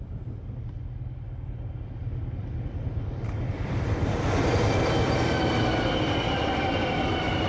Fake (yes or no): yes